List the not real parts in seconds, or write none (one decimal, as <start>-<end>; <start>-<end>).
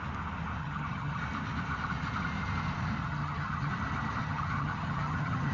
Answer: 0.6-1.2; 3.0-3.7; 4.2-5.5